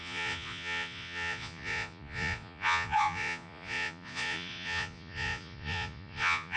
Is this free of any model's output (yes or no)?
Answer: no